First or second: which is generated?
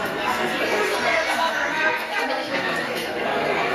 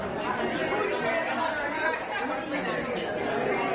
first